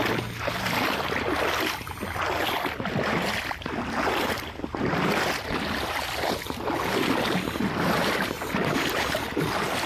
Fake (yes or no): no